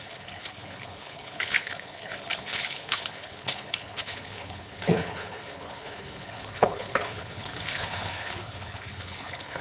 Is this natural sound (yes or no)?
no